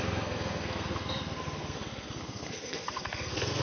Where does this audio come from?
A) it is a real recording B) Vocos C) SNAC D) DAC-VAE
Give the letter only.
C